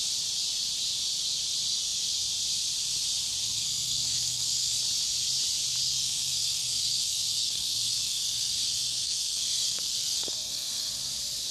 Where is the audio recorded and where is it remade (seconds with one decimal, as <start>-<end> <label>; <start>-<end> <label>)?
0.0-3.4 recorded; 3.4-4.8 remade; 4.8-5.9 recorded; 5.9-10.9 remade; 10.9-11.5 recorded